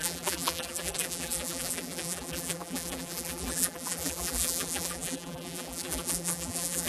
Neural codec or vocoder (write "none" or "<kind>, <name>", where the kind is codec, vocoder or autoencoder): vocoder, BigVGAN v2